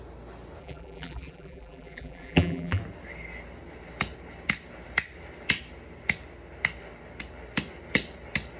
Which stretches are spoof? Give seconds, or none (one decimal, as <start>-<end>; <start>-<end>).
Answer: 0.6-2.8